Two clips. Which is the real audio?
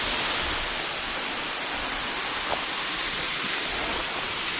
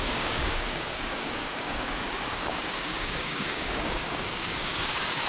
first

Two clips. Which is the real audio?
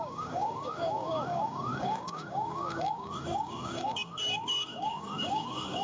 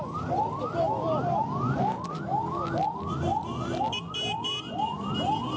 second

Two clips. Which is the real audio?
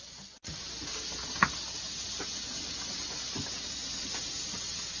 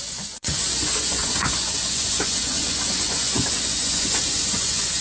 first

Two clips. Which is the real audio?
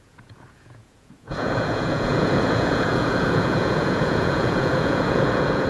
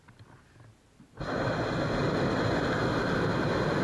second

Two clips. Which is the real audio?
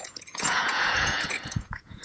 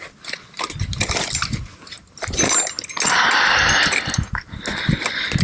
second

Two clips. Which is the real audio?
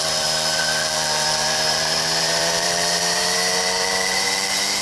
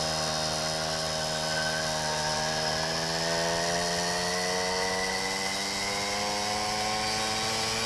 second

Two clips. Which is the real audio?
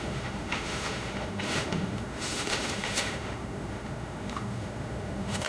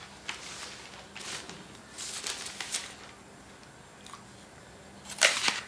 second